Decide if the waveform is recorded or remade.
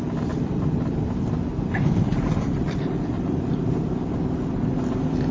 remade